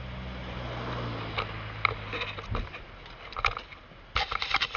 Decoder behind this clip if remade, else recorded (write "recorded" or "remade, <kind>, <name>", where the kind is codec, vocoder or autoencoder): recorded